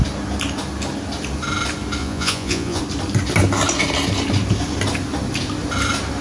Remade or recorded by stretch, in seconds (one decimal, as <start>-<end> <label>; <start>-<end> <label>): 0.0-2.0 recorded; 2.0-2.8 remade; 2.8-6.2 recorded